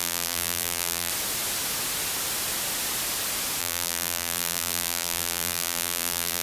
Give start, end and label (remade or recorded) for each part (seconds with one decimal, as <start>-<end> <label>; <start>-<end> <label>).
0.0-1.1 remade; 1.1-3.6 recorded; 3.6-6.4 remade